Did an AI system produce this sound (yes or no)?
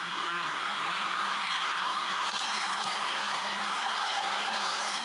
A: yes